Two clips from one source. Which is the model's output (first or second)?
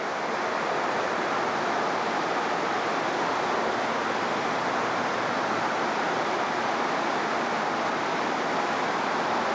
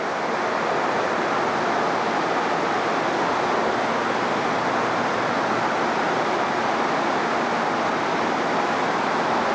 first